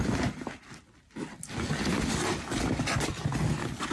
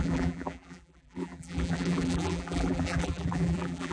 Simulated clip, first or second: second